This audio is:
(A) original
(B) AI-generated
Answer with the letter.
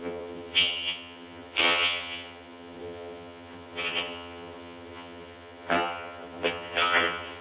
B